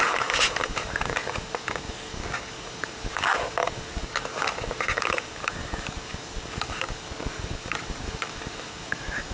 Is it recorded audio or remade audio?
remade